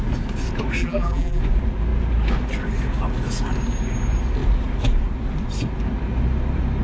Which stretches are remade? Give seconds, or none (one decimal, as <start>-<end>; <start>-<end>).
0.8-1.4